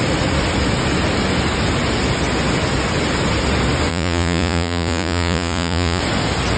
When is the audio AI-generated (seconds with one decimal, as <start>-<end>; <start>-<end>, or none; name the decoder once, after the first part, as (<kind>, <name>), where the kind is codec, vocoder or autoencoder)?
3.9-6.0 (vocoder, Vocos)